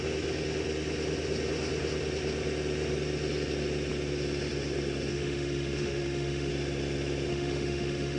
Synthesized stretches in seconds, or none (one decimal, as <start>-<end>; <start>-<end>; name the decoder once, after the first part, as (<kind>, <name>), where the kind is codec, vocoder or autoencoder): 5.1-6.5 (autoencoder, DAC-VAE); 7.3-8.2